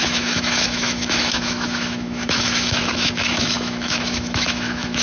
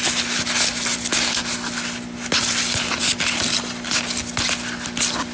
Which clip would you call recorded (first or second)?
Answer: second